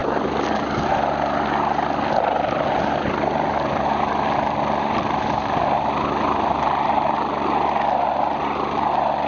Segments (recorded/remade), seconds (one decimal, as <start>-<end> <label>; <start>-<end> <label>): 0.0-9.3 recorded